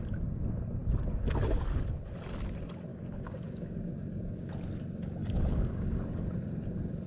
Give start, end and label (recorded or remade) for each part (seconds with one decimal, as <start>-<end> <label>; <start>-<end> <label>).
0.0-2.9 recorded; 2.9-4.5 remade; 4.5-5.2 recorded; 5.2-6.3 remade; 6.3-7.1 recorded